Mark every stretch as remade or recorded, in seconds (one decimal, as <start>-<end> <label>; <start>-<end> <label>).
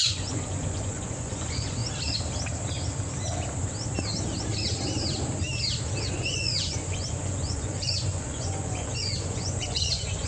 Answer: 0.0-1.8 remade; 1.8-6.1 recorded; 6.1-10.3 remade